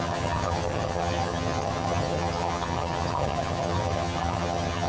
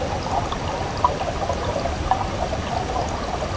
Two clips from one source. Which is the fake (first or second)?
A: first